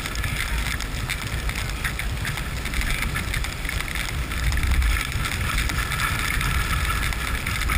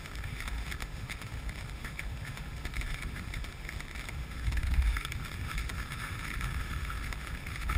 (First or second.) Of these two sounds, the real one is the first